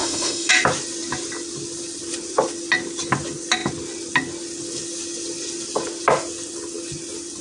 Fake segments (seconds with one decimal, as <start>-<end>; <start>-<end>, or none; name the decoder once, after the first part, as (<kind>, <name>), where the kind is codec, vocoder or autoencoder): 0.0-0.5 (autoencoder, DAC-VAE)